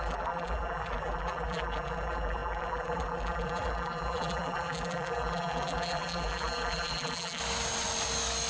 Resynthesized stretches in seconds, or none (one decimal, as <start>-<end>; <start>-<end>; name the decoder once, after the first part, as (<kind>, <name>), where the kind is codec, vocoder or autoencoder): 0.0-7.4 (vocoder, BigVGAN v2)